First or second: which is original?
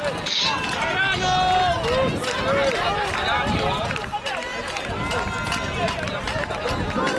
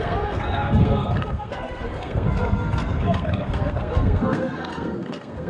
first